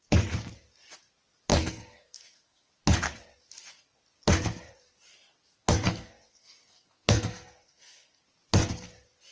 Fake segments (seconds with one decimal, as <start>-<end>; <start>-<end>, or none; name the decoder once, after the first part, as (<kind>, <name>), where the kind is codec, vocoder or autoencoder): 1.5-2.7 (codec, SNAC); 5.6-8.2